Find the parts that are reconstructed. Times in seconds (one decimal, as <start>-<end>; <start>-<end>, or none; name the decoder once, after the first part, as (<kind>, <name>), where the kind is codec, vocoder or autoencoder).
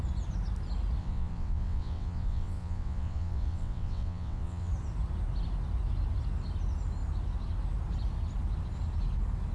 1.0-4.7 (vocoder, WaveNeXt)